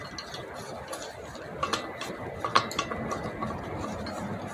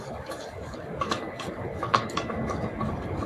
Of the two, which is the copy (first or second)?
second